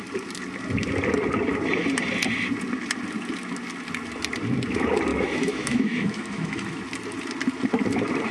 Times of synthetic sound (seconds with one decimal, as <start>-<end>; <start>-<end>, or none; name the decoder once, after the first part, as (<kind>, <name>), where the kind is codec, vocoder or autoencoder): 5.1-6.8 (autoencoder, DAC-VAE)

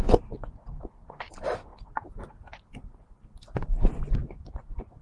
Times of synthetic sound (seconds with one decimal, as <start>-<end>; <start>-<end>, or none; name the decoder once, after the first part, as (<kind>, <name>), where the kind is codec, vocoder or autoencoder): none

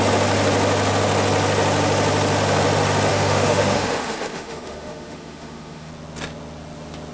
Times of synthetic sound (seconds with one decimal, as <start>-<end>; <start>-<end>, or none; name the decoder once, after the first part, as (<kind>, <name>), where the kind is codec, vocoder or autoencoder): 3.1-5.9 (autoencoder, DAC-VAE)

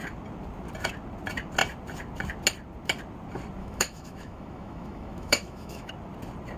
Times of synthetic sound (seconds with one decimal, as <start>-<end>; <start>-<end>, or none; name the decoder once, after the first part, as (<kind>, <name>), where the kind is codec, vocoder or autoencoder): 3.6-5.9 (autoencoder, DAC-VAE)

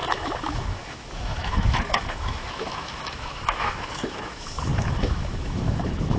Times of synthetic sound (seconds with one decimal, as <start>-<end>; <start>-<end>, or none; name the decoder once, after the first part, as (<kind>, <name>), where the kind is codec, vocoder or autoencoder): 0.0-6.2 (autoencoder, DAC-VAE)

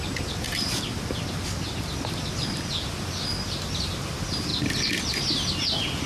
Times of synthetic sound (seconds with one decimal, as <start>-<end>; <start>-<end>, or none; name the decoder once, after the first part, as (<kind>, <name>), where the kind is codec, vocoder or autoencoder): none

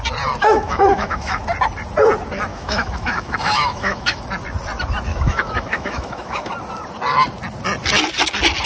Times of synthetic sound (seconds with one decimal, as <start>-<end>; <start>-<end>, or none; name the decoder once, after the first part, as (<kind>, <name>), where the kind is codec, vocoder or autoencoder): 0.4-1.4 (autoencoder, DAC-VAE); 2.5-4.2; 5.1-6.5